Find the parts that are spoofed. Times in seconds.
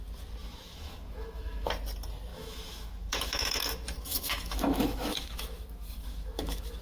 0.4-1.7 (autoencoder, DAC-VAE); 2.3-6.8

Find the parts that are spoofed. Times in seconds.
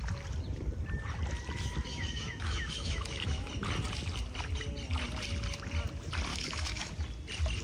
1.9-3.5 (autoencoder, DAC-VAE); 6.3-6.9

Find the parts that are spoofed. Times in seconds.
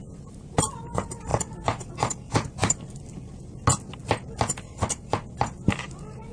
none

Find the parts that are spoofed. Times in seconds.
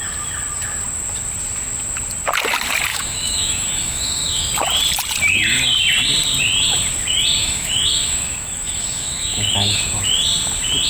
2.9-4.5 (autoencoder, DAC-VAE); 7.4-9.8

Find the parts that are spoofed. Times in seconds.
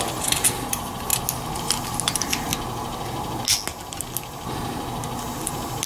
none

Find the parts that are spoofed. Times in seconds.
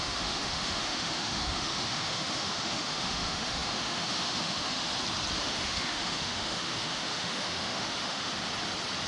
0.0-4.9 (autoencoder, DAC-VAE); 5.4-8.3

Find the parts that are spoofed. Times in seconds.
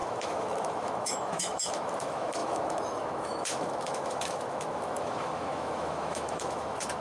0.0-7.0 (autoencoder, DAC-VAE)